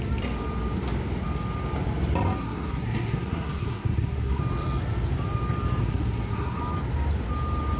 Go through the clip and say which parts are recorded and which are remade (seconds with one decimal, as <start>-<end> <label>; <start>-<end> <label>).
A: 0.0-2.4 recorded; 2.4-4.4 remade; 4.4-5.8 recorded; 5.8-6.6 remade; 6.6-7.8 recorded